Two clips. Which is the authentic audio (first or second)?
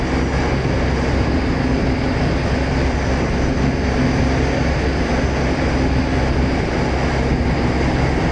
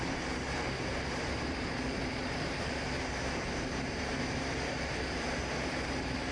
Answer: first